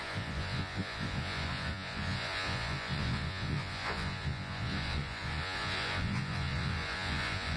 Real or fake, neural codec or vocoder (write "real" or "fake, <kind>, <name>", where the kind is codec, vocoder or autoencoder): fake, vocoder, Vocos